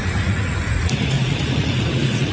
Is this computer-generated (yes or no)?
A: yes